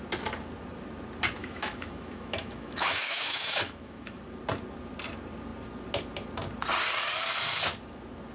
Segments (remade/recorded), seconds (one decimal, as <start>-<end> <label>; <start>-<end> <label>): 0.0-1.4 recorded; 1.4-4.2 remade; 4.2-8.3 recorded

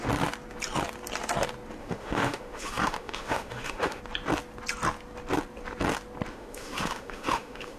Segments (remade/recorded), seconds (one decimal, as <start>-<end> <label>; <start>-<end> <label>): 0.0-1.8 recorded; 1.8-4.0 remade; 4.0-6.3 recorded; 6.3-7.8 remade

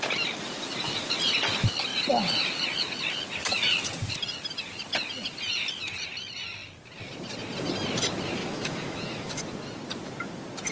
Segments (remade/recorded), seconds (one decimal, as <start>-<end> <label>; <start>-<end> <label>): 0.0-8.4 recorded; 8.4-9.4 remade; 9.4-10.7 recorded

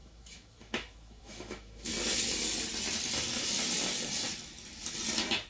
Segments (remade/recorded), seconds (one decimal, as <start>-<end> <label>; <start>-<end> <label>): 0.0-1.9 remade; 1.9-5.5 recorded

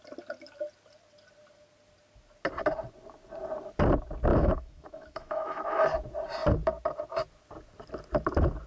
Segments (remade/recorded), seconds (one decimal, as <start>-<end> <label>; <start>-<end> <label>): 0.0-4.3 recorded; 4.3-5.8 remade; 5.8-8.7 recorded

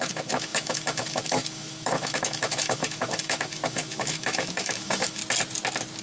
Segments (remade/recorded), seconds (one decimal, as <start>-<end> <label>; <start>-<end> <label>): 0.0-5.2 remade; 5.2-6.0 recorded

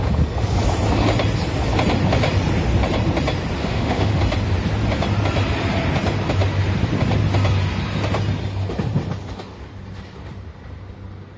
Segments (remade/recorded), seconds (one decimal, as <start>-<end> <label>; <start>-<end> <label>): 0.0-3.6 recorded; 3.6-4.2 remade; 4.2-11.4 recorded